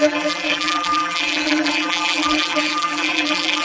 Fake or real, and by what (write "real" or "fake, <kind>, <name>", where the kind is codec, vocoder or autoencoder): fake, vocoder, BigVGAN v2